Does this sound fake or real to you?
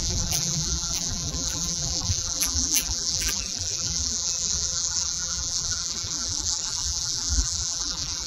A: fake